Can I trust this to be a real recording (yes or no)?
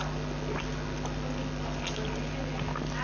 yes